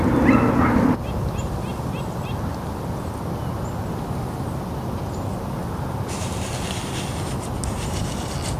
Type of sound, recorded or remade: recorded